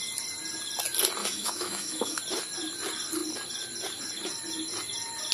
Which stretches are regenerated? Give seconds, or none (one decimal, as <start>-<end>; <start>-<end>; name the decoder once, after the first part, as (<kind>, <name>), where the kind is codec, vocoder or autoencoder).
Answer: 1.2-2.2 (autoencoder, DAC-VAE)